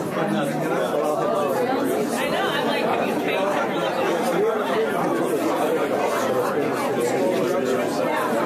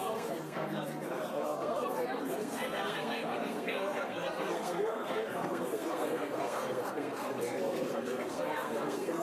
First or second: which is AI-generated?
second